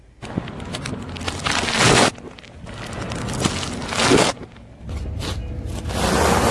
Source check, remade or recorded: recorded